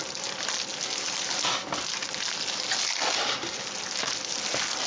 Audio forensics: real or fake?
real